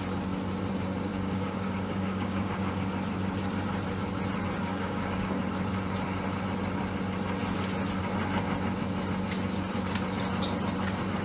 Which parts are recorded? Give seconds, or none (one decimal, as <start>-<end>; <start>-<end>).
0.0-1.1; 2.7-4.6; 5.4-11.2